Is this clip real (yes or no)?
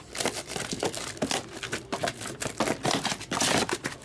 yes